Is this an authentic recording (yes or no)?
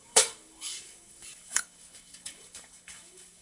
no